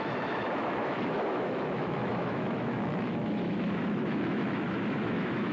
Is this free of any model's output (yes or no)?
no